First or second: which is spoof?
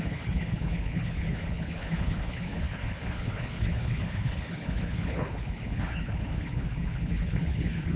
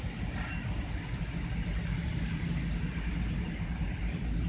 first